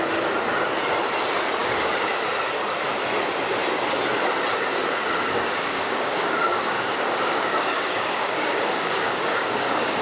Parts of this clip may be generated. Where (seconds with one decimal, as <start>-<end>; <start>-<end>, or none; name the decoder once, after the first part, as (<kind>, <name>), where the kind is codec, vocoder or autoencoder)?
1.6-2.1 (codec, DAC); 5.0-10.0